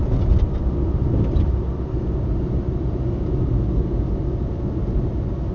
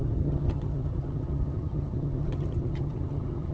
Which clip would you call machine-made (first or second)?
second